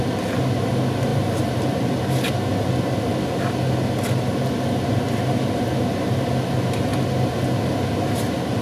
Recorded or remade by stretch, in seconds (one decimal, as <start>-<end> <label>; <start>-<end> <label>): 0.0-1.1 recorded; 1.1-2.5 remade; 2.5-8.6 recorded